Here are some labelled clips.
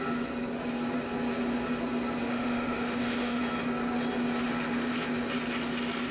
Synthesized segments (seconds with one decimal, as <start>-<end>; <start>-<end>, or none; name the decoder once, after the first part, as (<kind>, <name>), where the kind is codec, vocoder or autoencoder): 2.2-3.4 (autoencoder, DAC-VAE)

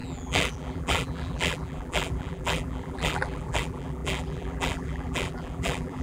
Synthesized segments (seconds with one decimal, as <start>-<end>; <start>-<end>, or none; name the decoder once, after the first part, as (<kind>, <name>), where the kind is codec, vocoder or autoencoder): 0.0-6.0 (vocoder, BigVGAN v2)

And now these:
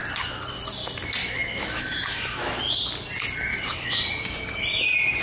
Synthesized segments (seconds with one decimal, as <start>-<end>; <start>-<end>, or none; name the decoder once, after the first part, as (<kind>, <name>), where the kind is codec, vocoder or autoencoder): 1.2-2.5 (autoencoder, DAC-VAE); 3.5-4.0